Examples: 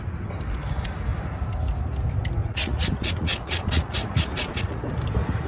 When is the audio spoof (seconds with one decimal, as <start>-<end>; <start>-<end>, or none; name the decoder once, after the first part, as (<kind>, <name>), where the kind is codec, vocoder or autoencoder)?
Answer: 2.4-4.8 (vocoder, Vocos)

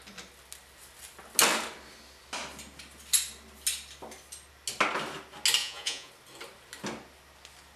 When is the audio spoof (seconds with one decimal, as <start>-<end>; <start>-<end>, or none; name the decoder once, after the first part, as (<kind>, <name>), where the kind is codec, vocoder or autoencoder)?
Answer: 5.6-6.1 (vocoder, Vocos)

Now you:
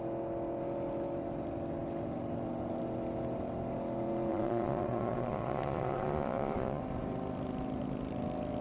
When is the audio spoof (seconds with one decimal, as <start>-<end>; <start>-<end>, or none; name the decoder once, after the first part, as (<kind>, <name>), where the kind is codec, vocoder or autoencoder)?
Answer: 4.3-6.8 (vocoder, Vocos)

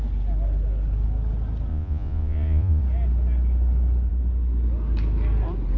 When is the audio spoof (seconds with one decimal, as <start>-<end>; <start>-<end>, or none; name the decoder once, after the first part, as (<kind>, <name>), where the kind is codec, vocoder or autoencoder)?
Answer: 1.7-2.8 (vocoder, Vocos)

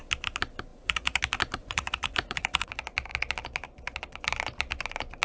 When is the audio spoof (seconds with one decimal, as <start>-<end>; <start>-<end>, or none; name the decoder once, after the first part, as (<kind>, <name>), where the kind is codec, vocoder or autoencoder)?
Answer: 0.7-1.2 (vocoder, Vocos); 1.6-2.7